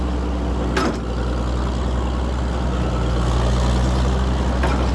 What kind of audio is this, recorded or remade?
recorded